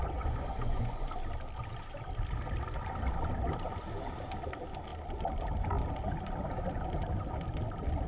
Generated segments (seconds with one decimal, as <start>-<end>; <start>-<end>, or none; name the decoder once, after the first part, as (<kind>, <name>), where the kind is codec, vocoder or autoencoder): 0.0-1.1 (vocoder, Vocos)